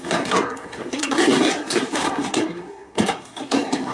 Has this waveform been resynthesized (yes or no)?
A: yes